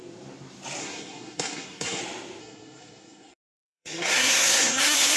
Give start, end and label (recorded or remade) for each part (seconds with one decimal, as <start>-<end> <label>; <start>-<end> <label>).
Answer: 0.0-0.8 recorded; 0.8-2.0 remade; 2.0-2.4 recorded; 2.4-5.2 remade